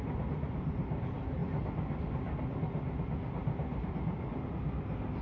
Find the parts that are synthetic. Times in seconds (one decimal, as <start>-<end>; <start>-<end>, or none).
none

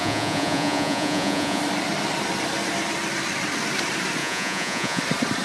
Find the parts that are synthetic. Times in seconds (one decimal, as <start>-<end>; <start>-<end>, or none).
0.0-1.6; 4.2-5.0

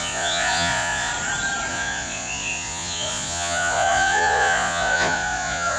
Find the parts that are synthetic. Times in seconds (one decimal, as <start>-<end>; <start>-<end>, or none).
0.0-1.1; 1.7-5.8

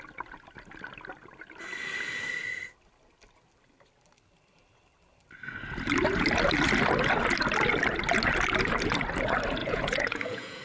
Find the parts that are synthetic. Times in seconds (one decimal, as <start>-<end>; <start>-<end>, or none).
9.6-10.6

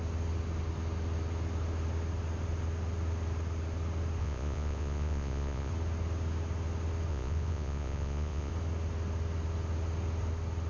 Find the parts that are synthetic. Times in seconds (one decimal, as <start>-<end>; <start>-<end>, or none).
4.2-5.7; 7.1-8.5

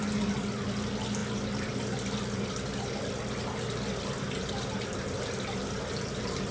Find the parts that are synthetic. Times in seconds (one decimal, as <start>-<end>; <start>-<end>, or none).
none

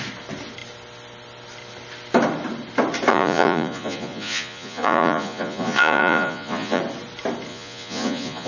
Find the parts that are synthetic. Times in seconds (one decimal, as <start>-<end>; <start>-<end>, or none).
3.1-6.8; 7.5-8.5

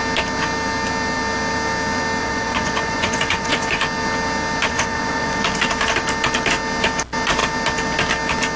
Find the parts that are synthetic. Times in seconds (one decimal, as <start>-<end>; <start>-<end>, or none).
2.2-3.8; 4.7-5.4